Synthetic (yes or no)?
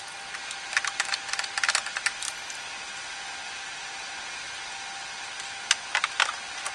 no